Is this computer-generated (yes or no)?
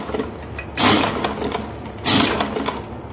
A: no